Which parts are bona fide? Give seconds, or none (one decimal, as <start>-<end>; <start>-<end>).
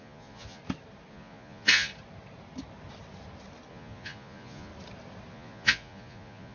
0.6-1.1; 1.9-3.7; 4.7-5.3